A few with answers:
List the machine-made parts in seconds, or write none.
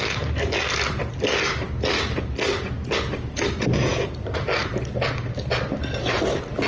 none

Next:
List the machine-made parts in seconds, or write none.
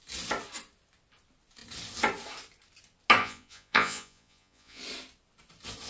3.2-4.8 (vocoder, Vocos)